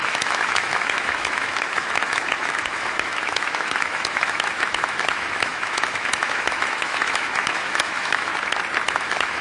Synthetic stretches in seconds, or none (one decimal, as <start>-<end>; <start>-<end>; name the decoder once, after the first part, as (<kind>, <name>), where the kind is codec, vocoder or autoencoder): 0.0-8.3 (autoencoder, DAC-VAE); 8.9-9.4